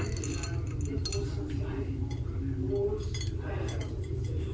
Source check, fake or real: real